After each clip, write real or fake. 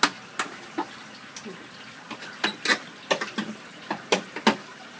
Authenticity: real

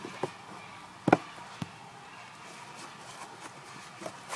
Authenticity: real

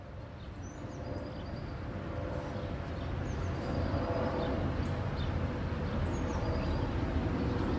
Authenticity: real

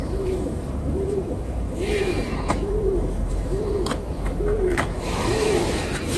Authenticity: fake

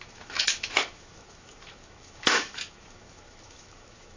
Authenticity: fake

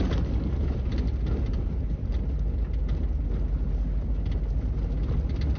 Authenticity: real